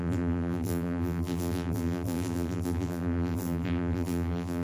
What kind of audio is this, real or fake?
fake